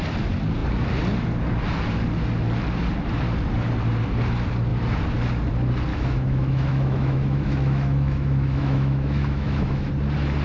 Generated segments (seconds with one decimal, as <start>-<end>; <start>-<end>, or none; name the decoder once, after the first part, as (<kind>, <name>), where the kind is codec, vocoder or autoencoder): 5.9-9.9 (autoencoder, DAC-VAE)